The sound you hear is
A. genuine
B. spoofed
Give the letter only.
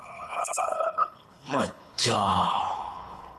B